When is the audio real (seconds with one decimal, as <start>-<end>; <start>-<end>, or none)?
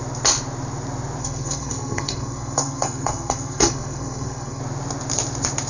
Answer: 0.0-1.2; 4.6-5.7